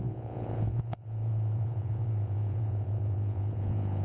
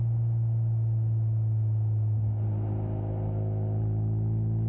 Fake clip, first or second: first